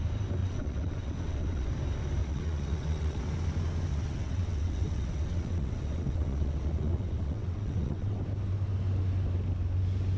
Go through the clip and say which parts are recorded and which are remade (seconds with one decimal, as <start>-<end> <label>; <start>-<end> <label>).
0.0-0.4 recorded; 0.4-1.7 remade; 1.7-2.2 recorded; 2.2-3.2 remade; 3.2-3.9 recorded; 3.9-8.2 remade; 8.2-10.2 recorded